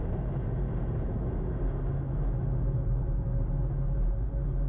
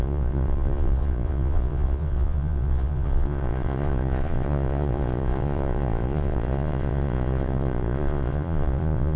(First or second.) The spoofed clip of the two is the second